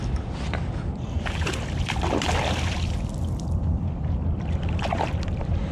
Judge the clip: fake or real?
fake